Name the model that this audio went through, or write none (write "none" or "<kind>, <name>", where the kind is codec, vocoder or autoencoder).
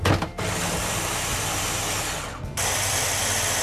none